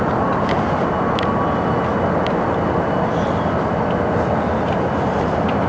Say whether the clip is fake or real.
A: real